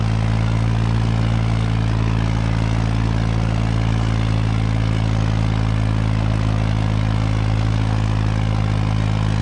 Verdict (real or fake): real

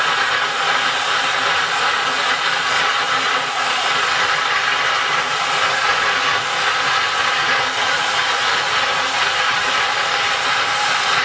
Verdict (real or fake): real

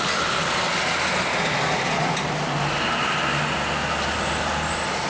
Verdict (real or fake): real